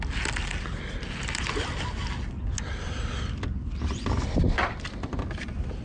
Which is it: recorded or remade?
recorded